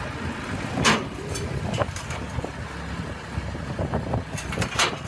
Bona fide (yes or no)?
yes